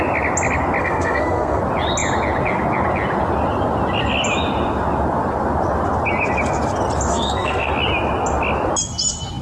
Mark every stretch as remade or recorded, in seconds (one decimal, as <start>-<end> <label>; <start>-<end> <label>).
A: 0.0-0.8 recorded; 0.8-1.6 remade; 1.6-7.1 recorded; 7.1-7.7 remade; 7.7-9.4 recorded